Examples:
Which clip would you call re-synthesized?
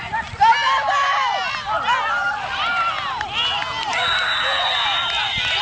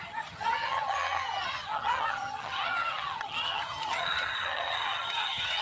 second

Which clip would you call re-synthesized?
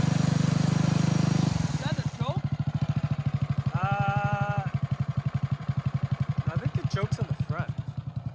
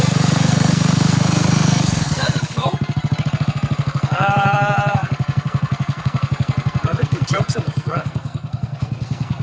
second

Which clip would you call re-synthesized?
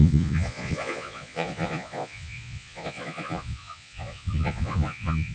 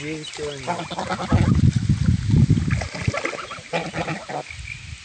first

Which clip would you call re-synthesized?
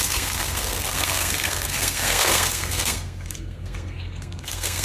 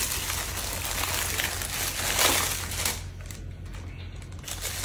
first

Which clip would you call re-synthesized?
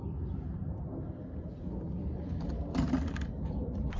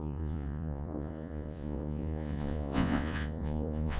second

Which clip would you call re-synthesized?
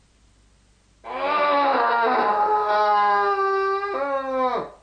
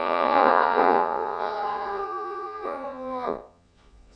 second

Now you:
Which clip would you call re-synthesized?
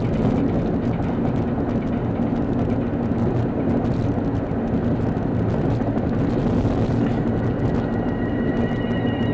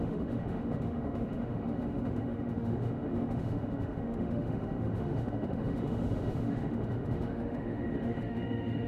second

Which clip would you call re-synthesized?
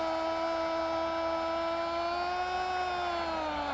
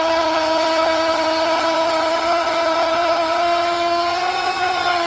second